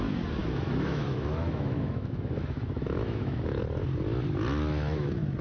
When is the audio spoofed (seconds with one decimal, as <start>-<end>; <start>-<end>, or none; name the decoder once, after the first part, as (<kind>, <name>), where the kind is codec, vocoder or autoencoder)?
0.4-3.6 (autoencoder, DAC-VAE)